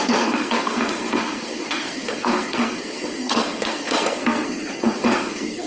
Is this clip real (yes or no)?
no